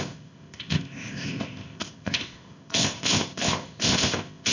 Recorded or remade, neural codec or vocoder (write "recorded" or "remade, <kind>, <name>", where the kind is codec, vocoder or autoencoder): remade, codec, ZipCodec